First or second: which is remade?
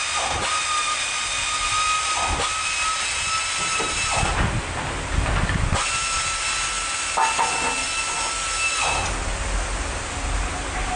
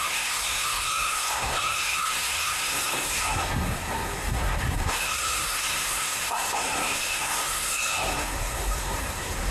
second